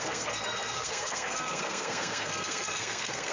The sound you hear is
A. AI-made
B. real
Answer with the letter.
A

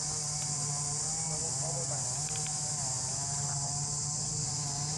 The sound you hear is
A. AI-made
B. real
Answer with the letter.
B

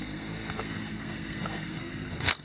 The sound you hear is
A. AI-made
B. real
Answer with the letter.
A